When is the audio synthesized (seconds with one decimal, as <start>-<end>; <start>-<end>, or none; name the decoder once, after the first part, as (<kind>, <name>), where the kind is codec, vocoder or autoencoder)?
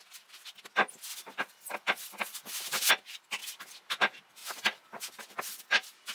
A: 1.1-2.9 (vocoder, BigVGAN v2); 3.4-3.9